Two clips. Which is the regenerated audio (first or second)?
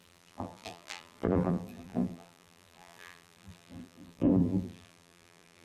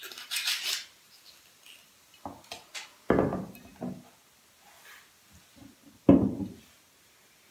first